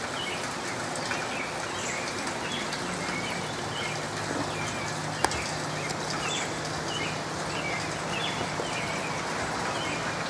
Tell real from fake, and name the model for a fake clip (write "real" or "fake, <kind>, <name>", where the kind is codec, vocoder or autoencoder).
real